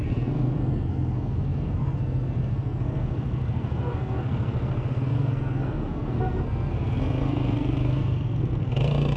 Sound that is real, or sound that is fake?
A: fake